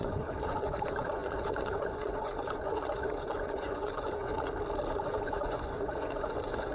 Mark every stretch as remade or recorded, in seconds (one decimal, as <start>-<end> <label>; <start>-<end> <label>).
0.0-4.3 remade; 4.3-4.9 recorded; 4.9-6.7 remade